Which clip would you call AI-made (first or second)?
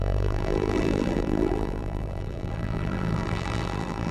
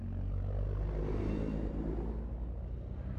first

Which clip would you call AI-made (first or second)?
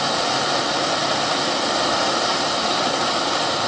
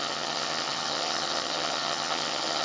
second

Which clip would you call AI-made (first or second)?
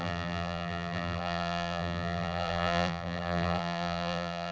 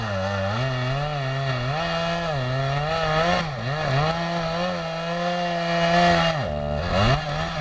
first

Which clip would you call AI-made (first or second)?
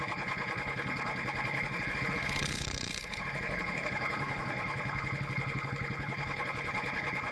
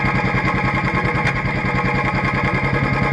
first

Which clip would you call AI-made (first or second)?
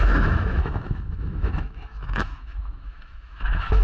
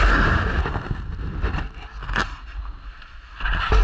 first